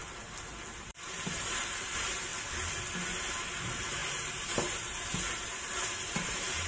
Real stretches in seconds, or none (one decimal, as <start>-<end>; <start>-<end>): 0.0-0.9; 2.3-3.5